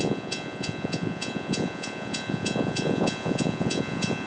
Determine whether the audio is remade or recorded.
remade